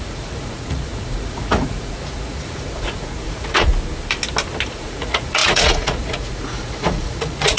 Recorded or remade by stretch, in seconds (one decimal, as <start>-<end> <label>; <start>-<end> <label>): 0.0-3.7 remade; 3.7-4.7 recorded; 4.7-7.6 remade

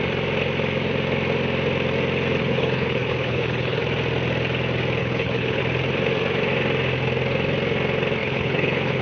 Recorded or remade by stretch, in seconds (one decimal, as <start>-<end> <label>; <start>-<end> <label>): 0.0-2.4 recorded; 2.4-3.8 remade; 3.8-5.0 recorded; 5.0-5.6 remade; 5.6-8.2 recorded; 8.2-9.0 remade

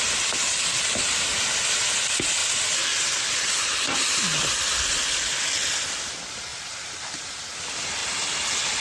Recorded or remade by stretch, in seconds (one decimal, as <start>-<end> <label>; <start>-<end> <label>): 0.0-2.4 recorded; 2.4-5.4 remade; 5.4-6.5 recorded; 6.5-7.2 remade; 7.2-8.8 recorded

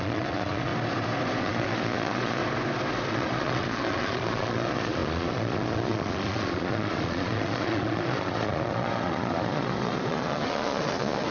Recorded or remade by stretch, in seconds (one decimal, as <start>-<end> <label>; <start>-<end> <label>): 0.0-0.7 remade; 0.7-1.4 recorded; 1.4-2.4 remade; 2.4-3.1 recorded; 3.1-11.3 remade